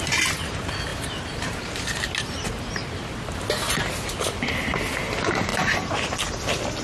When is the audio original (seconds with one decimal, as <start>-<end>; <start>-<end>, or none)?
0.0-0.9; 3.4-5.5; 6.1-6.8